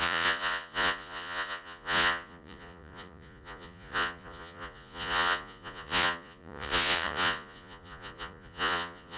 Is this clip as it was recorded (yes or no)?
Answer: no